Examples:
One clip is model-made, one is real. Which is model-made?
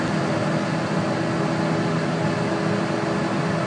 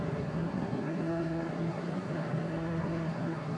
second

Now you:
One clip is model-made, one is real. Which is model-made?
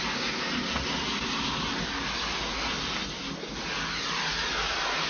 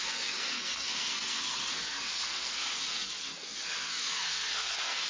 second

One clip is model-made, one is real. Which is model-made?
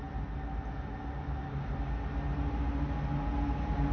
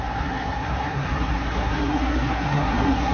second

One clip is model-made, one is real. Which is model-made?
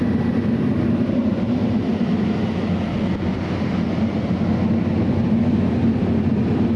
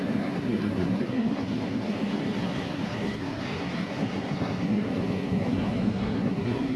second